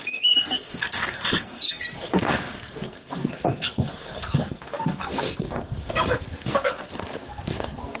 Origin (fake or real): fake